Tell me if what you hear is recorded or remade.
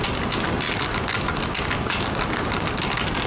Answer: recorded